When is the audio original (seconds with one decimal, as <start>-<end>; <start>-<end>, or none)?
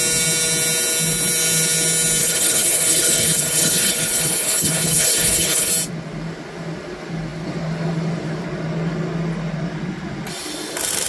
0.0-2.2; 5.7-11.1